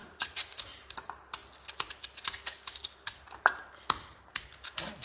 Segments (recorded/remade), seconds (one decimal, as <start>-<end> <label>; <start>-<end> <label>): 0.0-0.6 remade; 0.6-5.0 recorded